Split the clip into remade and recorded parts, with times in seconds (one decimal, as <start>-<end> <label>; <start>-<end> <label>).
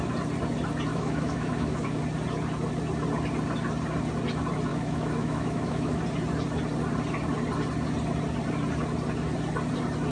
0.0-0.9 recorded; 0.9-2.0 remade; 2.0-4.7 recorded; 4.7-6.0 remade; 6.0-10.1 recorded